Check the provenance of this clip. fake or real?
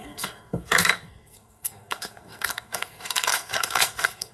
fake